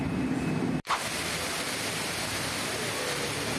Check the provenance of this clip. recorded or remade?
recorded